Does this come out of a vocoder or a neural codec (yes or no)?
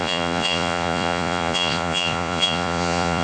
yes